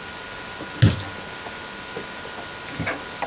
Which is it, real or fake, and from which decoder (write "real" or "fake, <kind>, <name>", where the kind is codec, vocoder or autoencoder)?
real